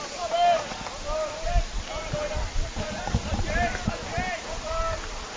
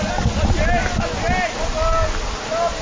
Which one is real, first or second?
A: second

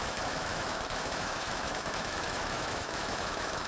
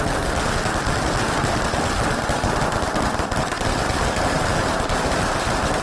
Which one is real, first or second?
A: second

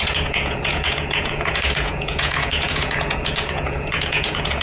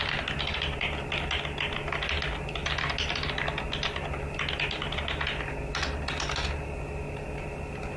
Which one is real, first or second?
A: second